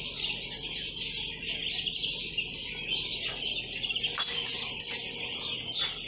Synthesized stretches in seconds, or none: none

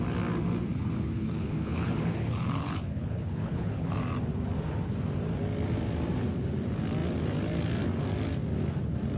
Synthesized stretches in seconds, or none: 0.7-3.9 (codec, HILCodec)